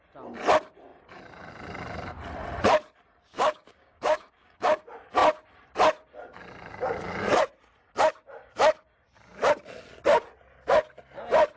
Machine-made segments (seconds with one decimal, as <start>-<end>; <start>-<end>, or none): 3.3-4.8